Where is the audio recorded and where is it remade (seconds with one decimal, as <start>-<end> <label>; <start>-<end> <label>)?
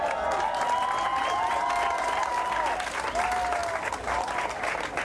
0.0-5.0 recorded